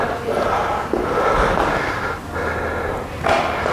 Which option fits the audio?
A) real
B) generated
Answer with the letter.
A